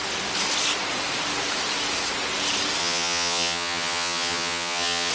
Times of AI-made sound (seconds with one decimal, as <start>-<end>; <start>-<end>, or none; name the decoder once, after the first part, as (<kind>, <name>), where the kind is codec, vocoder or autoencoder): 2.8-5.1 (vocoder, HiFi-GAN)

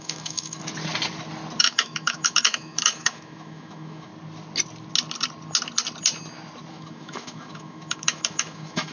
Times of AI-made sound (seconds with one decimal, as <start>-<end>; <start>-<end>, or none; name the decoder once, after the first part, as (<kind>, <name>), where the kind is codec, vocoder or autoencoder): 0.0-0.6 (autoencoder, DAC-VAE); 1.6-4.1; 6.7-8.9

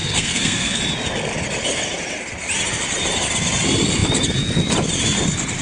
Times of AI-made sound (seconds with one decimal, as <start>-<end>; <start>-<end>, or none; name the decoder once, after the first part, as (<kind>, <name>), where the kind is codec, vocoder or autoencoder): 0.0-0.8 (codec, SNAC)

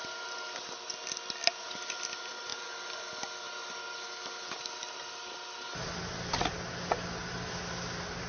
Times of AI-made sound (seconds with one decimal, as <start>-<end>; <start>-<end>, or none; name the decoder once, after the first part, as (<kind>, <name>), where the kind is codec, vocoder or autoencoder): none

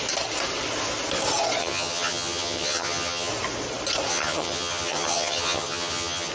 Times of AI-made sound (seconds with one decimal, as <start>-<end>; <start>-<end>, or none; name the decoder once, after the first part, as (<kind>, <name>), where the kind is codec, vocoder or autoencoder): 1.6-3.3 (vocoder, HiFi-GAN); 4.1-6.3

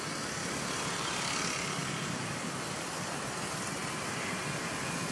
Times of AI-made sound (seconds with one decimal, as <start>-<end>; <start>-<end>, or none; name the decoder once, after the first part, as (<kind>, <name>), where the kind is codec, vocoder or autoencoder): 0.4-1.2 (vocoder, BigVGAN v2); 1.8-2.4